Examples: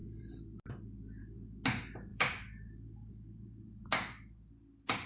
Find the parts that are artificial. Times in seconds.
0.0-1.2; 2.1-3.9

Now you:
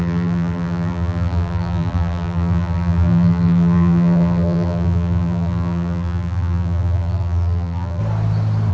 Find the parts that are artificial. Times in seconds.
0.0-8.0

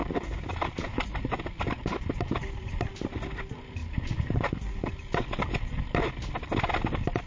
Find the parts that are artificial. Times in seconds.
0.0-3.2; 3.8-4.9

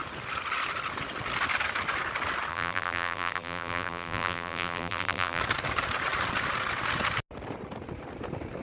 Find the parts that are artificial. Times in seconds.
2.5-5.4

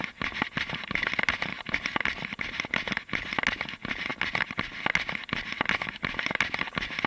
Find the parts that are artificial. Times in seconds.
1.5-2.4